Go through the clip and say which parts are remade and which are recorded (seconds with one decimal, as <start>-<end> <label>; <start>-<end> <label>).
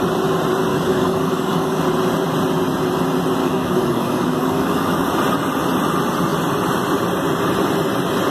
0.0-0.7 recorded; 0.7-1.8 remade; 1.8-3.4 recorded; 3.4-5.1 remade; 5.1-8.3 recorded